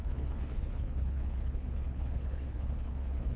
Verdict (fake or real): fake